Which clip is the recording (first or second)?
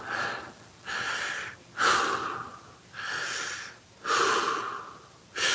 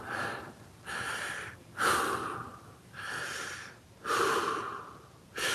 first